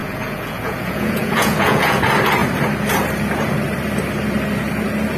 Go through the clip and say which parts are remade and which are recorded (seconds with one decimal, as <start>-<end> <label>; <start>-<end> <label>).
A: 0.0-2.0 remade; 2.0-5.2 recorded